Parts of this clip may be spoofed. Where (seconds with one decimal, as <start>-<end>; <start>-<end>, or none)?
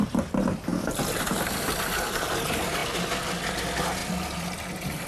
none